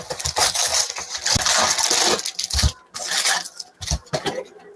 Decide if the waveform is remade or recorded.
recorded